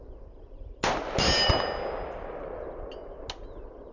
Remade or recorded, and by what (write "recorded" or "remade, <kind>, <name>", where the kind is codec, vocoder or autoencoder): recorded